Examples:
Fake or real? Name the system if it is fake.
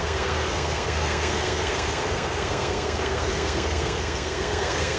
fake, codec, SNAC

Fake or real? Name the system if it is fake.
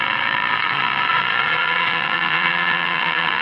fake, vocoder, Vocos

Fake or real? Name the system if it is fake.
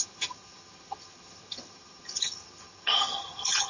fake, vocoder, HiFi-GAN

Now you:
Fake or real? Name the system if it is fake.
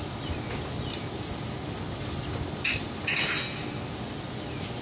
real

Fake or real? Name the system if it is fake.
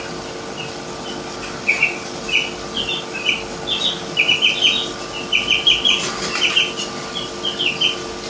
real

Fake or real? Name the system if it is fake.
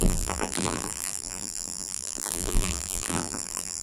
fake, vocoder, BigVGAN v2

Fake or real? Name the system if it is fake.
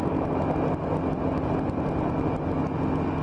real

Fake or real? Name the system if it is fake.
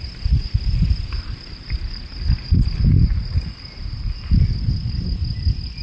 real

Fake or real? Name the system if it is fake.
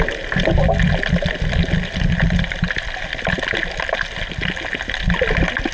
real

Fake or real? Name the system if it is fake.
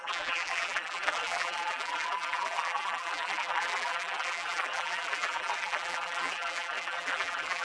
fake, vocoder, BigVGAN v2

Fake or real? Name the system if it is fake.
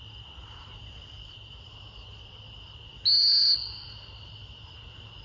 real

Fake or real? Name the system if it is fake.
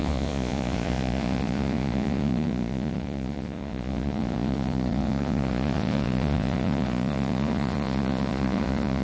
fake, vocoder, Vocos